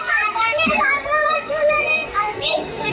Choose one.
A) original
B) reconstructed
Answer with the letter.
B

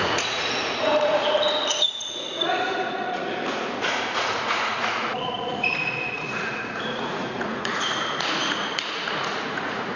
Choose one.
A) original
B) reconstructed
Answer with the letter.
B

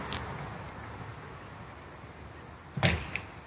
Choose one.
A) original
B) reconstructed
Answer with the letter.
A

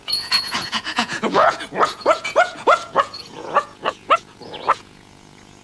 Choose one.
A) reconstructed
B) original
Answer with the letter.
A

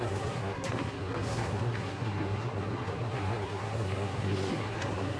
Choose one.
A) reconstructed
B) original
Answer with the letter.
A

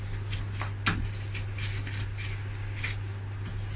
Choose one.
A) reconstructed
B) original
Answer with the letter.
B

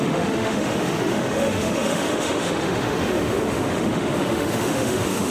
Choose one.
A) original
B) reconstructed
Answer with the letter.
B